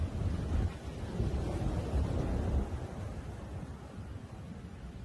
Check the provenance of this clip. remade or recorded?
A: recorded